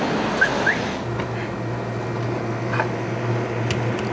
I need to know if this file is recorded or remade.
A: recorded